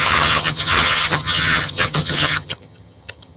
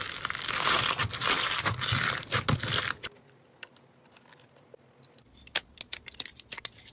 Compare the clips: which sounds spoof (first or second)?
first